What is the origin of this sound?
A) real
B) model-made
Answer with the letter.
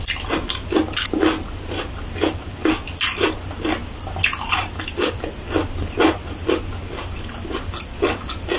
A